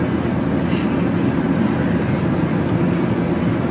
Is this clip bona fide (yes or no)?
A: yes